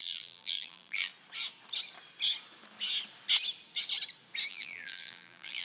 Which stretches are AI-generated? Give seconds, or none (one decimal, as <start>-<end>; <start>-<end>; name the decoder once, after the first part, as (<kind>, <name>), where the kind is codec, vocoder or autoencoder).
0.0-1.1 (vocoder, BigVGAN v2); 4.5-5.6